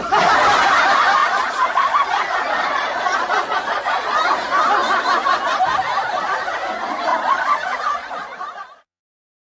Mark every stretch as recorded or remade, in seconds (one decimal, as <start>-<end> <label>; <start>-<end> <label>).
0.0-1.2 recorded; 1.2-4.2 remade; 4.2-7.1 recorded; 7.1-9.0 remade; 9.0-9.4 recorded